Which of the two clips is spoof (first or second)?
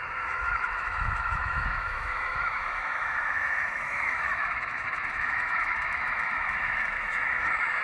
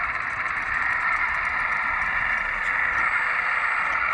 first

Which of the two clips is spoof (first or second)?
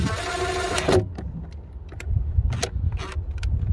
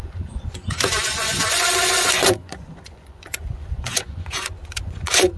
second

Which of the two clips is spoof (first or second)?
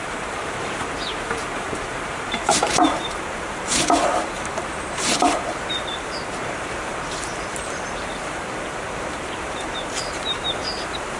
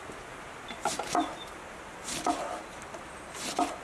first